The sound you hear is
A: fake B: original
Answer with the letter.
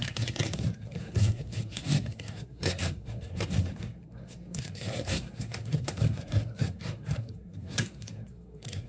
A